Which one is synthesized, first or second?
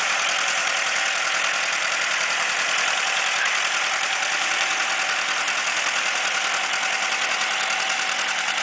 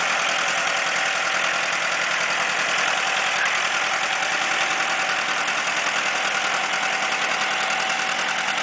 first